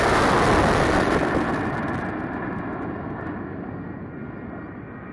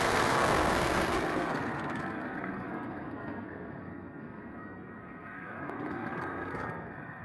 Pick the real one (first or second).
first